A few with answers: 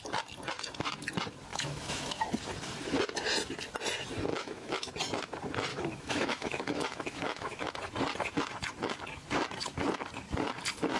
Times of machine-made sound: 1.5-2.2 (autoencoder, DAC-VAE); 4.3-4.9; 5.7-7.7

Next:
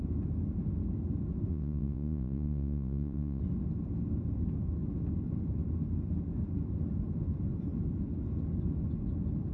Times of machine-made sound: 1.5-3.4 (vocoder, Vocos)

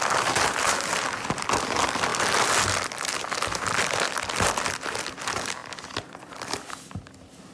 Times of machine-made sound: none

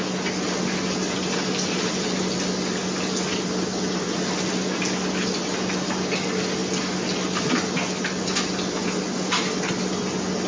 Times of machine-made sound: none

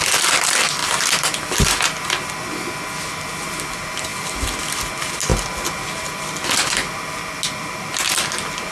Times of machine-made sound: 0.8-2.5 (vocoder, BigVGAN v2); 4.1-4.6